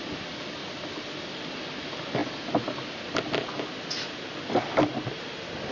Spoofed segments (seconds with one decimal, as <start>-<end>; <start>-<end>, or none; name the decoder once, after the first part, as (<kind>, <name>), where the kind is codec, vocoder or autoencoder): none